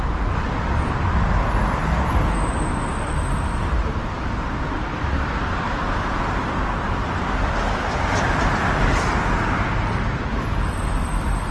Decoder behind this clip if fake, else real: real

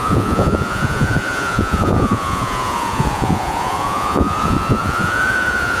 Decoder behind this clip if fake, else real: fake, vocoder, Vocos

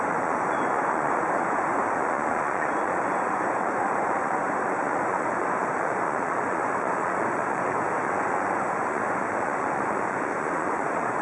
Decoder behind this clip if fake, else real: fake, vocoder, Vocos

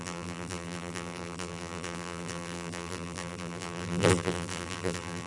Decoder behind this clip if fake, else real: fake, vocoder, BigVGAN v2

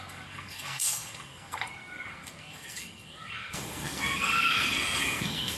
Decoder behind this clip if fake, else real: fake, codec, SNAC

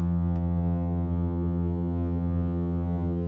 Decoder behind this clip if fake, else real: fake, vocoder, HiFi-GAN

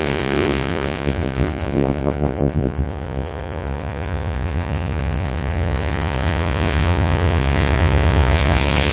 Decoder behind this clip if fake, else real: fake, vocoder, Vocos